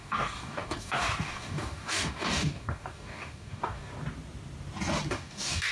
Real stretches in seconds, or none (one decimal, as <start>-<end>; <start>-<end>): 3.9-5.1